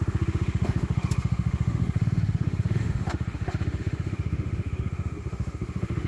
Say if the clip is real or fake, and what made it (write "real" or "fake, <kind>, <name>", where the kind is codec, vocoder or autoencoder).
fake, autoencoder, DAC-VAE